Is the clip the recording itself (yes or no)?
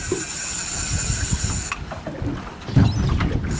yes